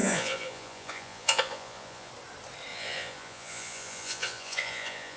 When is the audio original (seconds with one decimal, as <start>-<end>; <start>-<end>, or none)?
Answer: 2.1-2.7